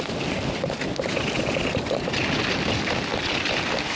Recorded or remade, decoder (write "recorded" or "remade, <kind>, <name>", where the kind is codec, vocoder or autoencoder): recorded